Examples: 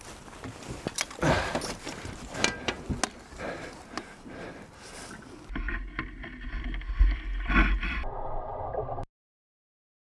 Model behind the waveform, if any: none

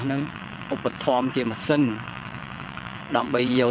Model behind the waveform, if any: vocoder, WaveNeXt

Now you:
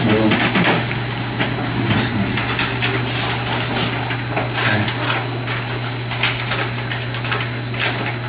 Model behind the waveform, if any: none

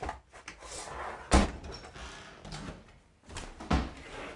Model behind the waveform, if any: none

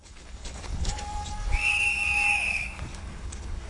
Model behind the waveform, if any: codec, DAC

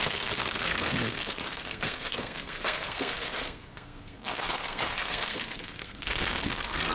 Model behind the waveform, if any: codec, SNAC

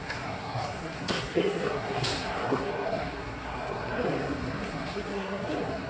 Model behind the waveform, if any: codec, SNAC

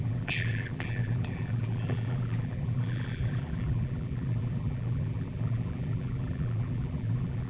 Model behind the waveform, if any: vocoder, BigVGAN v2